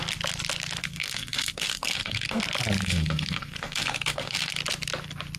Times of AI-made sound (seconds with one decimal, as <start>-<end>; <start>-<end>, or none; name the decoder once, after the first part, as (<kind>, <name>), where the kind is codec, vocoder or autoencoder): 0.8-2.4 (codec, SNAC); 2.8-4.5